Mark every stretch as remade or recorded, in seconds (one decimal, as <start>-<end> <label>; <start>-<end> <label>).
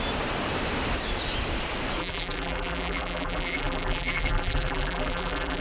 0.0-2.0 recorded; 2.0-5.6 remade